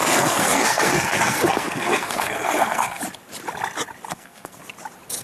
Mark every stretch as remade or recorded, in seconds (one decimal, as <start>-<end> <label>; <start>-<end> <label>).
0.0-3.0 remade; 3.0-4.1 recorded; 4.1-4.6 remade; 4.6-5.2 recorded